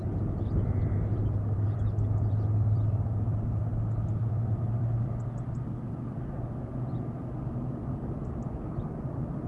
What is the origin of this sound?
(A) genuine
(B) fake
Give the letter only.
B